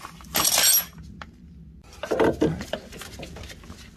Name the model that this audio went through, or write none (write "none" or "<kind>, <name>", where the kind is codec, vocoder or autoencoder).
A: none